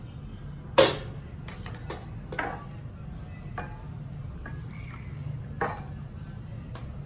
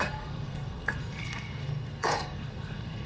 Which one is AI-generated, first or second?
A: second